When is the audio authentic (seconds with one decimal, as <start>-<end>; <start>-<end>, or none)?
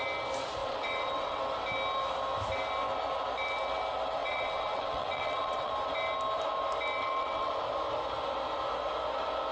0.0-0.6; 1.4-4.2; 5.7-7.0; 7.5-9.5